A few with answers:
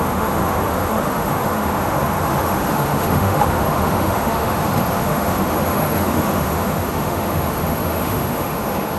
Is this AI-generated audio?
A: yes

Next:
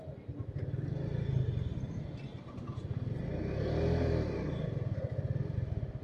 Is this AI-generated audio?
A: no